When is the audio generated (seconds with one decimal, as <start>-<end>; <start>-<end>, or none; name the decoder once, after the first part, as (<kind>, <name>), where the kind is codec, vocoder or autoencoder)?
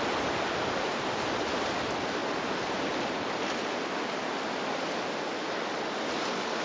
none